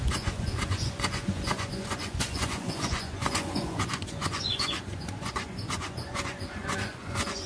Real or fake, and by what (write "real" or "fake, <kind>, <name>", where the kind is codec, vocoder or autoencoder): fake, vocoder, Vocos